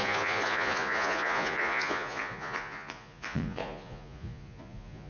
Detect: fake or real fake